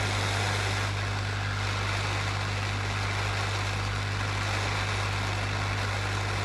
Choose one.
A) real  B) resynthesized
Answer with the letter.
A